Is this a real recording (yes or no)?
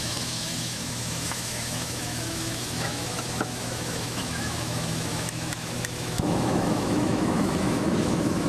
no